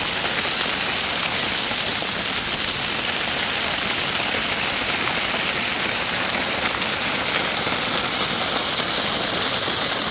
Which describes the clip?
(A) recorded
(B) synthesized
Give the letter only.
A